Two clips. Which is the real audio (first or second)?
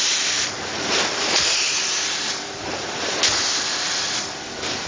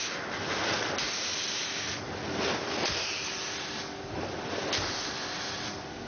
second